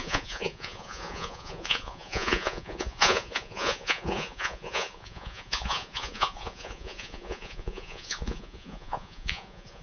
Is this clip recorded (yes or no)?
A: no